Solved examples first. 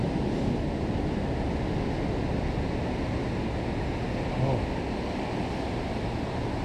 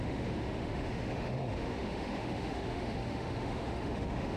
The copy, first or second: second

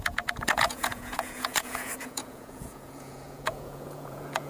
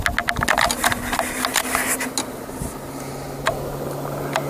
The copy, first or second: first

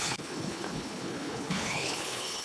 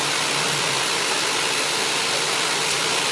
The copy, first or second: first